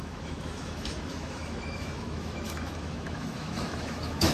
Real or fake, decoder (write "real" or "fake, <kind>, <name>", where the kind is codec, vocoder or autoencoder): fake, autoencoder, DAC-VAE